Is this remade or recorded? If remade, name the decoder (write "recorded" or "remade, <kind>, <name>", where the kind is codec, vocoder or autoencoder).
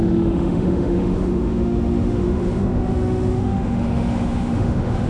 remade, autoencoder, DAC-VAE